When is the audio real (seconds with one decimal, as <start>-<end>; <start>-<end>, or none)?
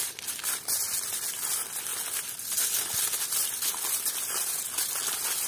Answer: 0.0-5.5